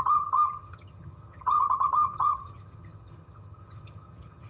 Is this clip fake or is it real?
fake